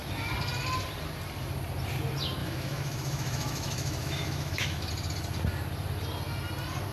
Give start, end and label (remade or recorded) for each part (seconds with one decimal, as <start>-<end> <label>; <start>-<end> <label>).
0.0-2.4 recorded; 2.4-4.9 remade; 4.9-6.9 recorded

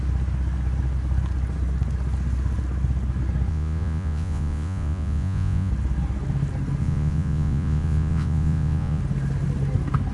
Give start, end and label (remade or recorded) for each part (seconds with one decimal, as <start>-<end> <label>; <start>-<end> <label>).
0.0-3.5 recorded; 3.5-5.7 remade; 5.7-6.8 recorded; 6.8-9.0 remade; 9.0-10.1 recorded

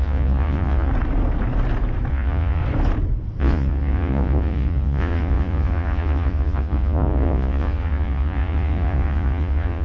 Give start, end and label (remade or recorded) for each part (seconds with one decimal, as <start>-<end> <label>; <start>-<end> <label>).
0.0-0.9 remade; 0.9-2.1 recorded; 2.1-2.6 remade; 2.6-3.4 recorded; 3.4-9.8 remade

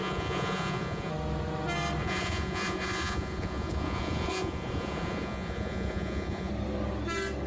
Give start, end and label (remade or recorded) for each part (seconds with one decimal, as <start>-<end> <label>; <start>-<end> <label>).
0.0-1.1 remade; 1.1-2.0 recorded; 2.0-6.5 remade; 6.5-7.5 recorded

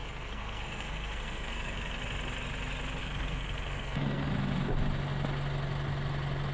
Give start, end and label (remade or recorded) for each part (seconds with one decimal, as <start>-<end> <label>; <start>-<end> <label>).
0.0-2.0 remade; 2.0-3.0 recorded; 3.0-4.3 remade; 4.3-6.5 recorded